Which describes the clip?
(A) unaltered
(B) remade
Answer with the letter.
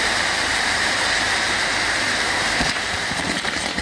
B